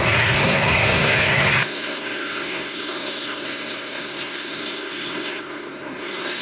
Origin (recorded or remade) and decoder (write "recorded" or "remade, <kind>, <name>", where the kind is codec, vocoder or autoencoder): remade, codec, SNAC